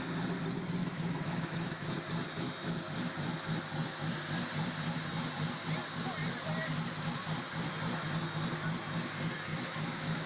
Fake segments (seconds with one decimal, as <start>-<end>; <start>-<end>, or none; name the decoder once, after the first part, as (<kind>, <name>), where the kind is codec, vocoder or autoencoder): 0.8-1.9 (autoencoder, DAC-VAE); 9.5-10.3